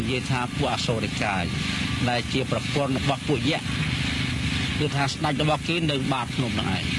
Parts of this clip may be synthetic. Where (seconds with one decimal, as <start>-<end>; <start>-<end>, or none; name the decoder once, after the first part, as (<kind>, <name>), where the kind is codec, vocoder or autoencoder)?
none